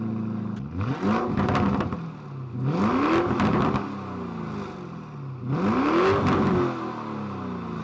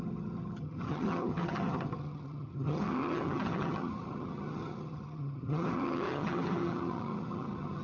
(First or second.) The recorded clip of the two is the first